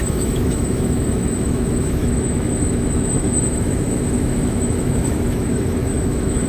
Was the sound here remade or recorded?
remade